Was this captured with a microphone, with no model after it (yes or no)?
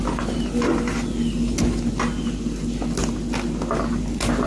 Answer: yes